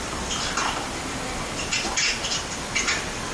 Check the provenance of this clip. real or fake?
real